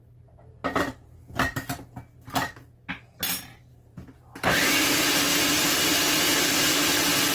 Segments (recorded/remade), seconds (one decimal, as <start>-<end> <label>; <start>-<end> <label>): 0.0-3.7 recorded; 3.7-4.7 remade; 4.7-7.3 recorded